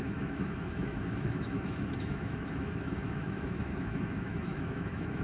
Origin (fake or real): fake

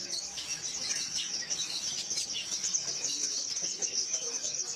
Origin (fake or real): fake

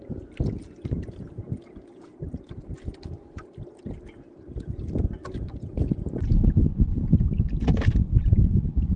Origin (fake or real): real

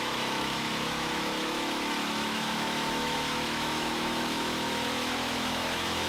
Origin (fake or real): fake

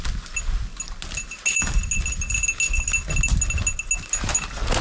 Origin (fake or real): real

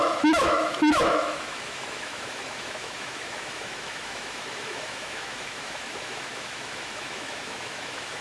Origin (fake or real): fake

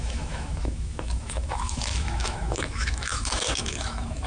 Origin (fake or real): fake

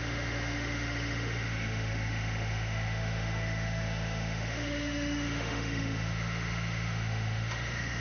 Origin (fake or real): fake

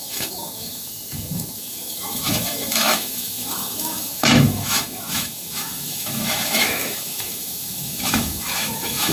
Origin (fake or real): fake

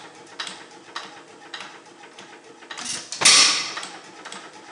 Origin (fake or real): real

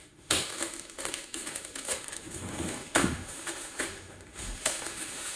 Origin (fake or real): fake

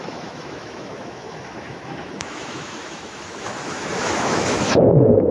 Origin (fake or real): fake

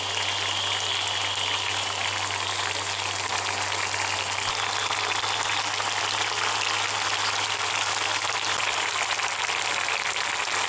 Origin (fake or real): real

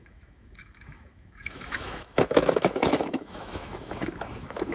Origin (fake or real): fake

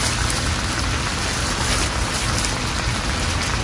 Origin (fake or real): real